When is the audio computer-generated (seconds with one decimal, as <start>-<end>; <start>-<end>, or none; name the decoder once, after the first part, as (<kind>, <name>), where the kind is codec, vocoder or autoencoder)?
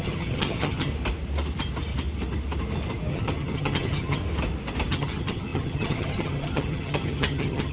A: 0.0-0.9 (vocoder, HiFi-GAN); 3.1-4.2; 4.9-7.7